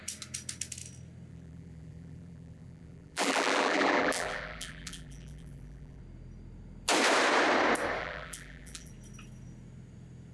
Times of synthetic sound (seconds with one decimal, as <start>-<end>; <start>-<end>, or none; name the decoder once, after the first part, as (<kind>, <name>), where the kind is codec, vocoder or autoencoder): 1.3-6.0 (vocoder, BigVGAN v2); 8.0-8.9